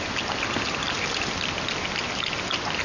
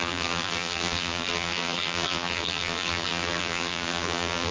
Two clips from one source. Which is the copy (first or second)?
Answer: second